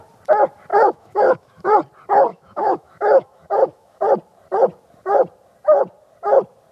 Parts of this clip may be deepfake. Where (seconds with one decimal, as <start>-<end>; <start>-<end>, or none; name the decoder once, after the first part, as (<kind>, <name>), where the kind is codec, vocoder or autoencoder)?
0.7-1.7 (autoencoder, DAC-VAE); 2.3-4.0